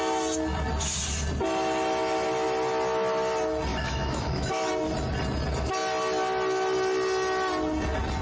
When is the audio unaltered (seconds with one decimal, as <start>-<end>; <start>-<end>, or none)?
0.0-3.7; 4.7-8.2